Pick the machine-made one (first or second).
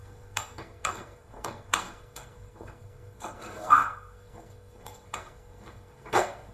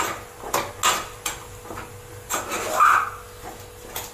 first